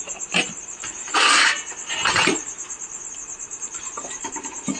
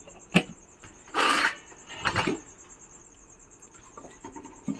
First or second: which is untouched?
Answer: second